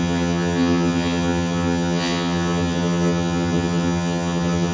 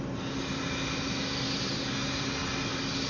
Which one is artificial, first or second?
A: first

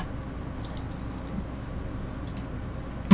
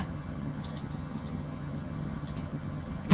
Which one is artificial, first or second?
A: second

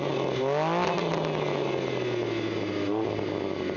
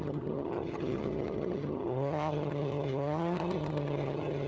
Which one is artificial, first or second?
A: second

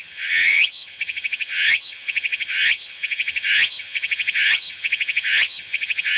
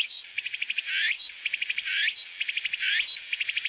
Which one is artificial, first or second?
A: first